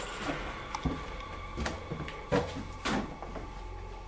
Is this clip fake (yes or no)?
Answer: no